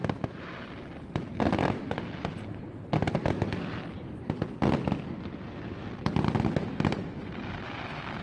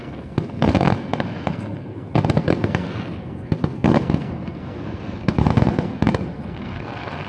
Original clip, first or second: first